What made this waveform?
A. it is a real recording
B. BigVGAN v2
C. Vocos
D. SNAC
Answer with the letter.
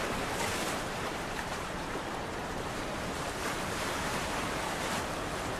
B